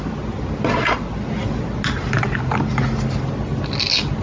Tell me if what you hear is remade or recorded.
recorded